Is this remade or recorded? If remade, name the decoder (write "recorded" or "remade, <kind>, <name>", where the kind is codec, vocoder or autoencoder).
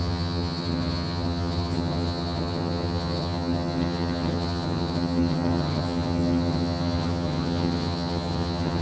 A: remade, vocoder, HiFi-GAN